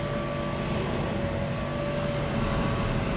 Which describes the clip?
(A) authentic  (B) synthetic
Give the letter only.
A